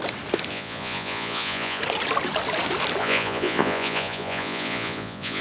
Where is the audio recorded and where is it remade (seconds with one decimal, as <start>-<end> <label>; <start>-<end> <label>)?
0.0-0.5 recorded; 0.5-1.8 remade; 1.8-3.0 recorded; 3.0-5.4 remade